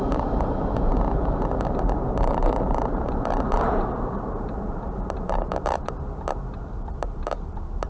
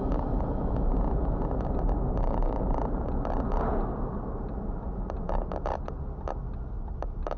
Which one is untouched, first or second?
second